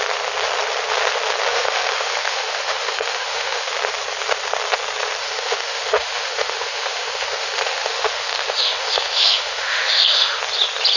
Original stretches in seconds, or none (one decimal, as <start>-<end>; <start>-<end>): 0.0-1.5; 3.7-5.2; 10.4-11.0